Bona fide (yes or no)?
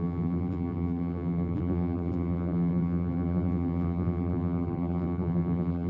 no